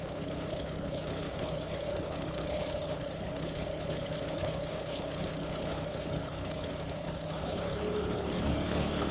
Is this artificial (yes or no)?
yes